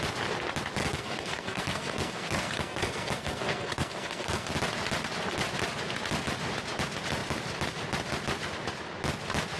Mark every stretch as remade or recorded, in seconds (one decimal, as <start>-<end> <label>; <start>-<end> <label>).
0.0-0.8 recorded; 0.8-4.5 remade; 4.5-9.6 recorded